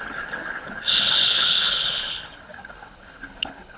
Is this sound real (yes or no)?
no